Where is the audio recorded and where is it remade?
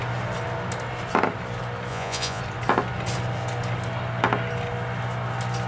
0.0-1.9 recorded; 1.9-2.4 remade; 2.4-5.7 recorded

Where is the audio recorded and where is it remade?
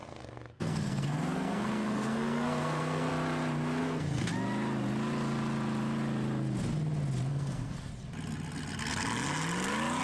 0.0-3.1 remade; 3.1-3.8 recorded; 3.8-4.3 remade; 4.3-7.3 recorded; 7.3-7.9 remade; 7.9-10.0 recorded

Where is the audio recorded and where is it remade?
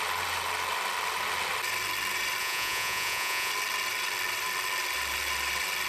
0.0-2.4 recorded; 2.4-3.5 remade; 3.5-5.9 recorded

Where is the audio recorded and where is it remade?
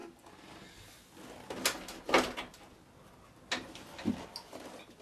0.0-5.0 recorded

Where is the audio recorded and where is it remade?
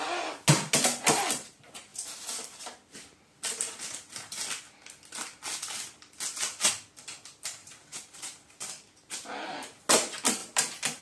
0.0-7.6 recorded; 7.6-9.1 remade; 9.1-10.4 recorded; 10.4-11.0 remade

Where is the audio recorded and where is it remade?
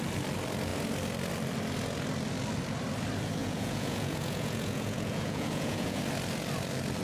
0.0-3.4 recorded; 3.4-6.0 remade; 6.0-7.0 recorded